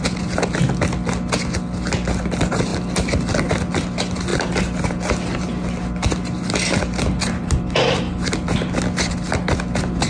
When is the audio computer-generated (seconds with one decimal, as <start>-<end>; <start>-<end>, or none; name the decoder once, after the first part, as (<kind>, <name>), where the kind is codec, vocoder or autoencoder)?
none